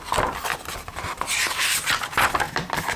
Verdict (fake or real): real